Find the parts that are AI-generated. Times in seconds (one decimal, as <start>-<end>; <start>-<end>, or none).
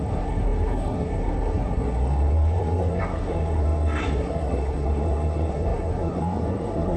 0.0-7.0